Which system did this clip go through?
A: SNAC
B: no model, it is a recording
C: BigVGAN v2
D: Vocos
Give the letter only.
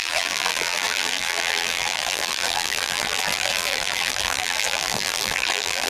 C